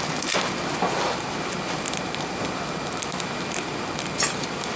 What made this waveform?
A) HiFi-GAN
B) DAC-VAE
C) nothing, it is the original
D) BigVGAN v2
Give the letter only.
D